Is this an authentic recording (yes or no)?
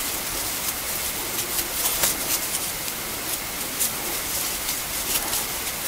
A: yes